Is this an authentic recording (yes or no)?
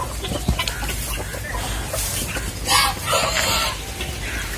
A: yes